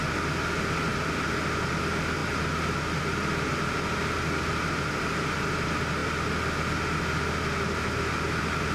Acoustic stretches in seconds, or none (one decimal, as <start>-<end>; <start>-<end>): 0.0-8.7